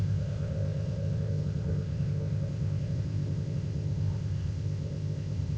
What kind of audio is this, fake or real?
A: fake